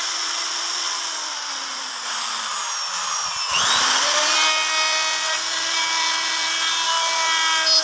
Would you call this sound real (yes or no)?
yes